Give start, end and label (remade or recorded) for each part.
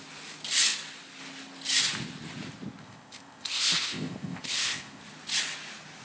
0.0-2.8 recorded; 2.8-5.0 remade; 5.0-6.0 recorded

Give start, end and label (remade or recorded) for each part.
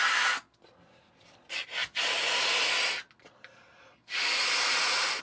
0.0-5.2 recorded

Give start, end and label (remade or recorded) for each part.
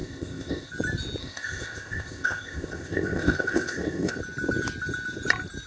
0.0-0.7 remade; 0.7-1.2 recorded; 1.2-4.2 remade; 4.2-5.7 recorded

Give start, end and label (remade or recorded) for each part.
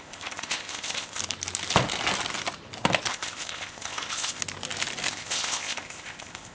0.0-1.2 remade; 1.2-3.1 recorded; 3.1-4.4 remade; 4.4-5.1 recorded; 5.1-6.5 remade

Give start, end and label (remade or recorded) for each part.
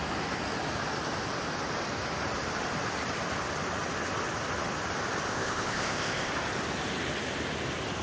0.0-5.3 recorded; 5.3-6.3 remade; 6.3-8.0 recorded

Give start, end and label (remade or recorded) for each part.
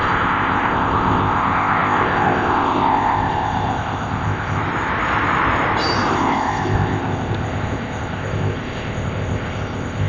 0.0-4.6 remade; 4.6-6.1 recorded; 6.1-10.1 remade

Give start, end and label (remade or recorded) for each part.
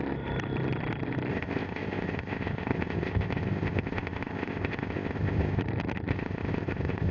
0.0-1.3 recorded; 1.3-5.6 remade; 5.6-6.1 recorded; 6.1-7.1 remade